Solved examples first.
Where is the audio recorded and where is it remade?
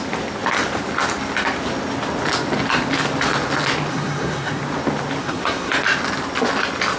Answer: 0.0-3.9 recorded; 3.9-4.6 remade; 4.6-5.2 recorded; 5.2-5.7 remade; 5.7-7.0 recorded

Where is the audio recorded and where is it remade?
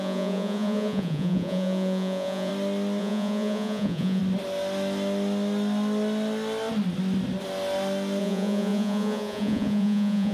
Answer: 0.0-2.5 remade; 2.5-3.0 recorded; 3.0-4.2 remade; 4.2-8.2 recorded; 8.2-10.3 remade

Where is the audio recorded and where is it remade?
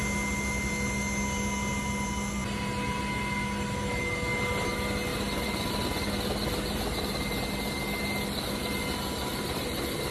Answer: 0.0-10.1 recorded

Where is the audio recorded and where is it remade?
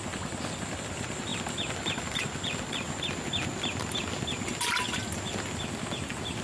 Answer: 0.0-6.4 recorded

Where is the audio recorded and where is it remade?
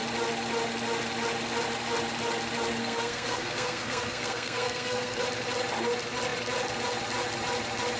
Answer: 0.0-2.8 recorded; 2.8-5.2 remade; 5.2-8.0 recorded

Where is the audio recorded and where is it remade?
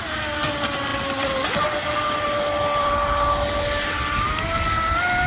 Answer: 0.0-5.3 recorded